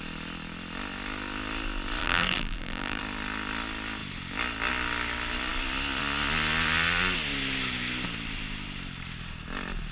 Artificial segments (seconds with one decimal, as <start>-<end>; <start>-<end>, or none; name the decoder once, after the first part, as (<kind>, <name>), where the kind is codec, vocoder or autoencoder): 2.0-3.0 (vocoder, BigVGAN v2)